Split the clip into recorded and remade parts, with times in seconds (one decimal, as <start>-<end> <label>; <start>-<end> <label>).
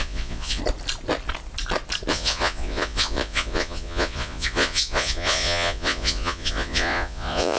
0.0-0.6 remade; 0.6-2.1 recorded; 2.1-7.6 remade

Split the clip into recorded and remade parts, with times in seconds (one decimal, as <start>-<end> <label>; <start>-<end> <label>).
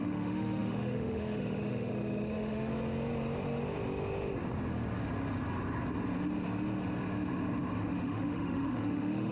0.0-2.7 remade; 2.7-7.8 recorded; 7.8-9.3 remade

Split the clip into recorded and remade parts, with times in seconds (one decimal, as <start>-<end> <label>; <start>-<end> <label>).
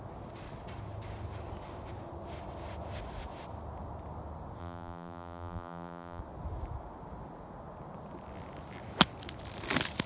0.0-4.6 recorded; 4.6-6.2 remade; 6.2-10.1 recorded